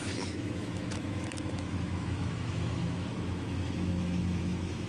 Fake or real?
fake